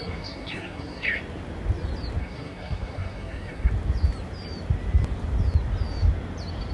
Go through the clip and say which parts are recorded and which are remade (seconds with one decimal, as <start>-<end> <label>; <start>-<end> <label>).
0.0-1.2 remade; 1.2-2.2 recorded; 2.2-3.7 remade; 3.7-6.7 recorded